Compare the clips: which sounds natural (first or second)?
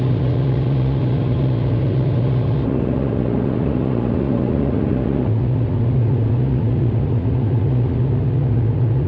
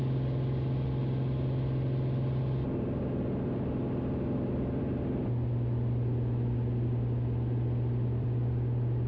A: second